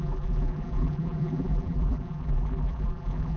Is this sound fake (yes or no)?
yes